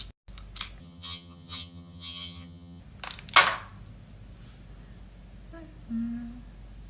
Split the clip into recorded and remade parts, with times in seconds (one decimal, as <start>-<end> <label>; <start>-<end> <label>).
0.0-0.8 recorded; 0.8-2.8 remade; 2.8-6.9 recorded